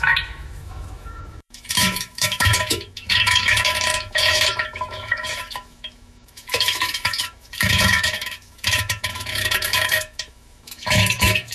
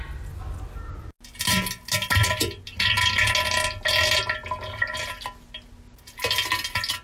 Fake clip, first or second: first